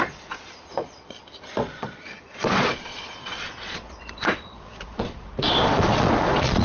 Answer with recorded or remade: remade